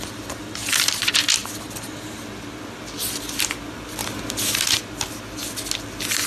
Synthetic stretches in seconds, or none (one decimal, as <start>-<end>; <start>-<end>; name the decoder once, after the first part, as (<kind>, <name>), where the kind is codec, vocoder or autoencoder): none

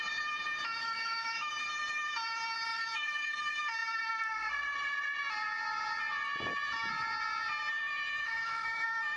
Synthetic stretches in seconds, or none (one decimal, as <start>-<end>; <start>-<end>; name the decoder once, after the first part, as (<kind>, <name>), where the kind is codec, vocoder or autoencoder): 0.8-1.5 (autoencoder, DAC-VAE); 2.7-3.4; 8.2-9.2

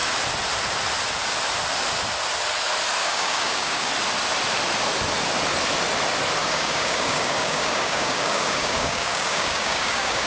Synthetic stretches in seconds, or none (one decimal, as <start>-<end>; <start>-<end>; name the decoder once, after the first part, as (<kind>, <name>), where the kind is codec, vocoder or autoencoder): 3.0-3.9 (codec, DAC); 6.4-10.3

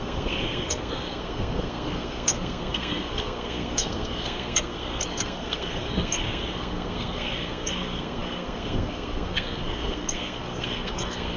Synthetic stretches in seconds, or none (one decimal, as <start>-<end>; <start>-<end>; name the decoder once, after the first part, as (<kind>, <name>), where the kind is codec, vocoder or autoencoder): 0.0-11.4 (codec, SNAC)